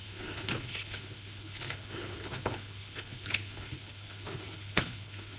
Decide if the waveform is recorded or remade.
remade